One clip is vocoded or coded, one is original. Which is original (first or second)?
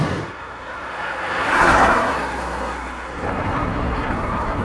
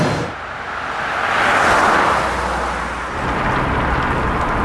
second